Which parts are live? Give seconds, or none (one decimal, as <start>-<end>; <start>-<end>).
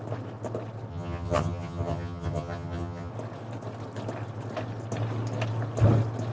0.0-0.9; 3.1-6.3